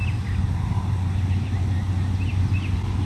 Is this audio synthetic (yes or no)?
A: no